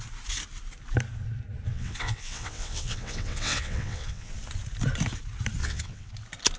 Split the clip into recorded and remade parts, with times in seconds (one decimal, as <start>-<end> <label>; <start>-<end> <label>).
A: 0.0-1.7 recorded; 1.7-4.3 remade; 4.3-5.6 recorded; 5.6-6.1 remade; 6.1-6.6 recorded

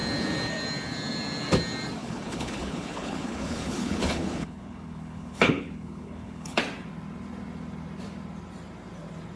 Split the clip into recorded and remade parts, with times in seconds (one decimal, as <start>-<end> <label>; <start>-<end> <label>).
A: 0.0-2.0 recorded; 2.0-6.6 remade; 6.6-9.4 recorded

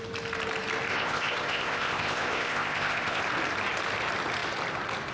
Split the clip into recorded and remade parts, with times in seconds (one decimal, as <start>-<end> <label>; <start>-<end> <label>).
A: 0.0-0.9 recorded; 0.9-3.2 remade; 3.2-5.1 recorded

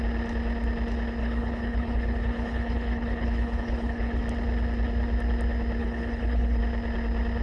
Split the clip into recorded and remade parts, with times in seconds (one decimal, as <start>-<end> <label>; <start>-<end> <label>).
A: 0.0-1.2 recorded; 1.2-4.2 remade; 4.2-5.8 recorded; 5.8-6.6 remade; 6.6-7.4 recorded

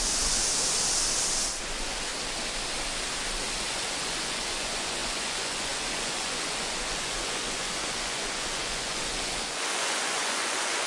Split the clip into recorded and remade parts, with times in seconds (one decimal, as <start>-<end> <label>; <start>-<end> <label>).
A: 0.0-0.4 remade; 0.4-1.6 recorded; 1.6-2.1 remade; 2.1-3.6 recorded; 3.6-10.9 remade

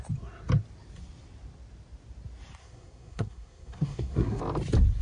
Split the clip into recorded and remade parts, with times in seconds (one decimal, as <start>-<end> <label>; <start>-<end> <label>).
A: 0.0-2.6 recorded; 2.6-4.4 remade; 4.4-5.0 recorded

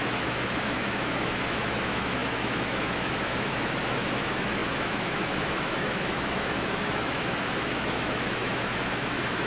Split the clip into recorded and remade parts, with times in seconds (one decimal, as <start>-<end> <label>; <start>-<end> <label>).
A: 0.0-9.5 remade

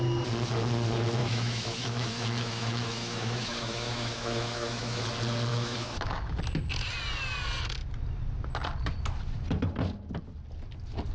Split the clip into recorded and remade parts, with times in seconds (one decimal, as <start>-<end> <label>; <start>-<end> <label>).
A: 0.0-1.2 recorded; 1.2-5.0 remade; 5.0-5.5 recorded; 5.5-6.4 remade; 6.4-11.1 recorded